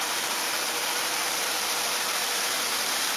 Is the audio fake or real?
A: fake